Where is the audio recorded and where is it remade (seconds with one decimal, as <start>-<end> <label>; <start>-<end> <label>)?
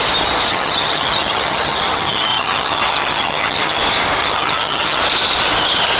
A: 0.0-0.5 recorded; 0.5-3.8 remade; 3.8-4.2 recorded; 4.2-5.0 remade; 5.0-6.0 recorded